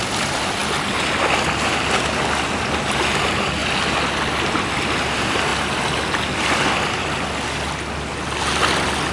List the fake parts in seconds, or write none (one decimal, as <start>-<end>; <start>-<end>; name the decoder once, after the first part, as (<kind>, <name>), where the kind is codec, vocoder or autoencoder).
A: none